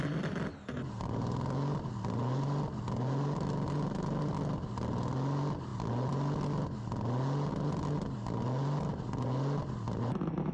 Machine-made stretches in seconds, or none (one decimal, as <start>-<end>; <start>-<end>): none